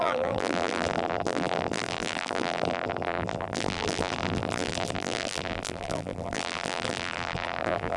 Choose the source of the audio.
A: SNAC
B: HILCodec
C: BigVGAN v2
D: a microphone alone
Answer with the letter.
C